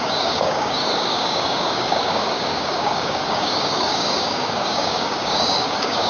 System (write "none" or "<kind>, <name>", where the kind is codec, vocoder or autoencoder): codec, DAC